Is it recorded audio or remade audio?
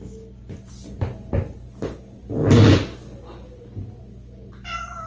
recorded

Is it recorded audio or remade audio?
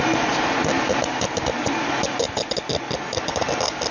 recorded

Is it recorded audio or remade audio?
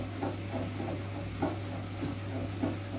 recorded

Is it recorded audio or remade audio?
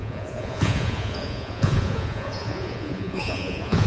remade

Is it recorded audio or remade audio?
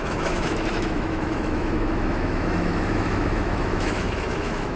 remade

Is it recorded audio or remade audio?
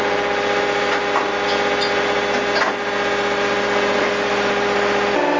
recorded